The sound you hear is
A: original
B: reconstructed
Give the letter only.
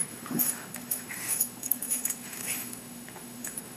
B